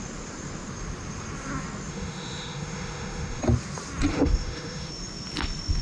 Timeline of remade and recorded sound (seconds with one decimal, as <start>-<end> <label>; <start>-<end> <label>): 0.0-1.9 recorded; 1.9-3.4 remade; 3.4-4.1 recorded; 4.1-4.9 remade; 4.9-5.8 recorded